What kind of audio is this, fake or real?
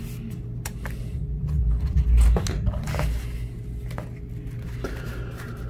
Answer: real